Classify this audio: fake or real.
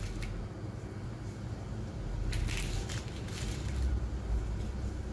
real